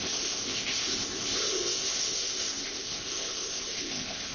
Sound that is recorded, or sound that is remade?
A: remade